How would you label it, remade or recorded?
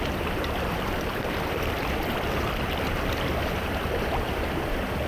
remade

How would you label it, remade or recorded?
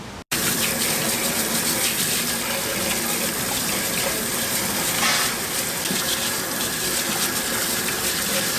recorded